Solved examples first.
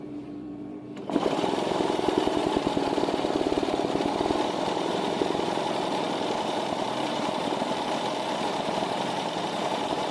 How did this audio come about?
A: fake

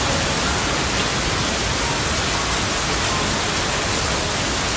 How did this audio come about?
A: real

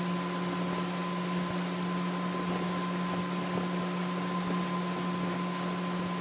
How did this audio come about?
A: real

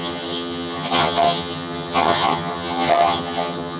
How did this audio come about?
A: fake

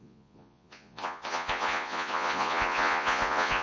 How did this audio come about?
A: fake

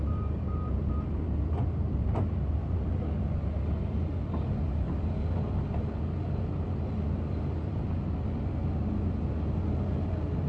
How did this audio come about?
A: real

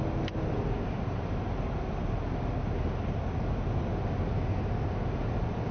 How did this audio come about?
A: real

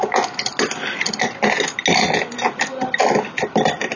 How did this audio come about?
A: real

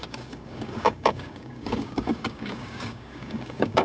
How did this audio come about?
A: fake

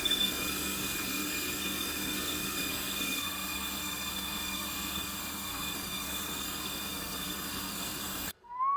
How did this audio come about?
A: fake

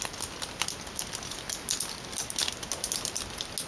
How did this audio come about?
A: real